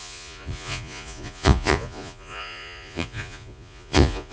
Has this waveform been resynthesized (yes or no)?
yes